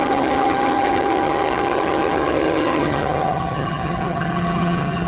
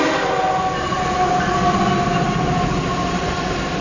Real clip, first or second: second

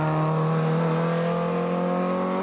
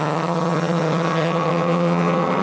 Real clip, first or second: first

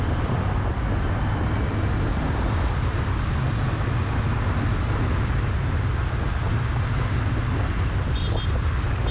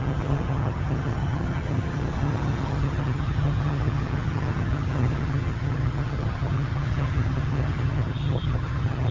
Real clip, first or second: first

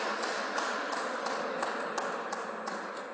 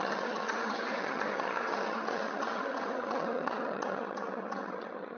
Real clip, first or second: first